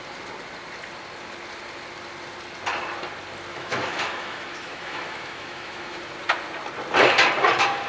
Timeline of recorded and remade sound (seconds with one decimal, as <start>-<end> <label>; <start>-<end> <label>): 0.0-3.5 recorded; 3.5-6.0 remade; 6.0-7.9 recorded